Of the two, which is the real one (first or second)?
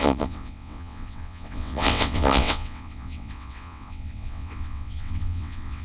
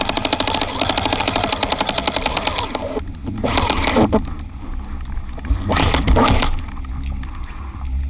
second